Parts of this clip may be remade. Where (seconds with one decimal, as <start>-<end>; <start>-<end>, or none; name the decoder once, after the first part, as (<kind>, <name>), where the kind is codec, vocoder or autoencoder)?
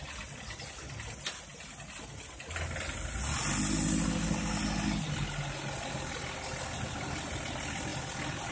none